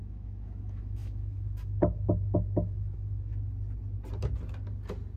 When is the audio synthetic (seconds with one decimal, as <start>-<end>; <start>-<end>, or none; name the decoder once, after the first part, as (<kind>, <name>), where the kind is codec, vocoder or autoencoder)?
0.0-3.3 (autoencoder, DAC-VAE)